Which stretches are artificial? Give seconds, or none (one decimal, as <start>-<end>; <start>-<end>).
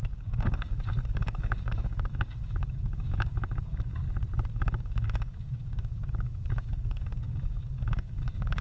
0.0-4.0; 4.5-8.6